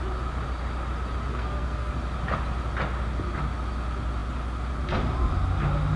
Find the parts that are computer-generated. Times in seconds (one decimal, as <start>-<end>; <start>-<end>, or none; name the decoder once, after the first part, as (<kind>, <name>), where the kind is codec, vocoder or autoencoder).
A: 1.3-1.9 (codec, SNAC)